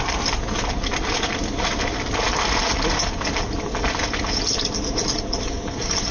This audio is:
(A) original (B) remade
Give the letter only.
A